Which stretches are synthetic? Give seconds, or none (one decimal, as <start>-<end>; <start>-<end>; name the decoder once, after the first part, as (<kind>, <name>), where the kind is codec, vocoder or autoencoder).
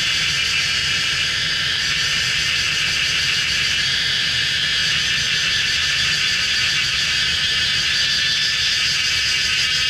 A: 0.8-1.5 (vocoder, BigVGAN v2); 2.0-2.8